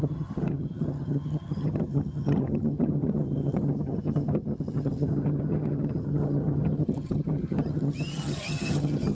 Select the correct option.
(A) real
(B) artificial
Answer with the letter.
B